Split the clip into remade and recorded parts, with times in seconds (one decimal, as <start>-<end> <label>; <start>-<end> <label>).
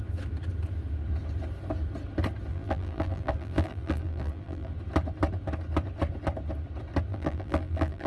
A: 0.0-2.5 recorded; 2.5-4.7 remade; 4.7-7.1 recorded; 7.1-8.1 remade